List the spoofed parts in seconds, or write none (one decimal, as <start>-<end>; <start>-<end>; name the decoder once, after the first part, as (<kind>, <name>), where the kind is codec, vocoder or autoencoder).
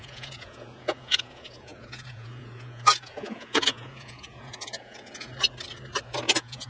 0.0-5.3 (vocoder, Vocos); 6.3-6.7